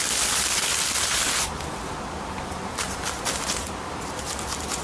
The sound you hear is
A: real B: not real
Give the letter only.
B